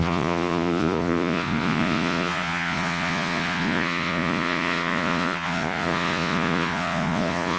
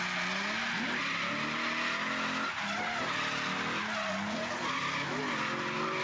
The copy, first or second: first